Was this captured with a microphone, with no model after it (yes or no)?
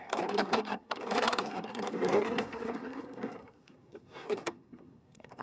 no